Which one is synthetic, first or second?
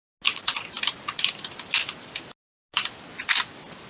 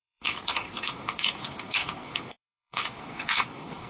second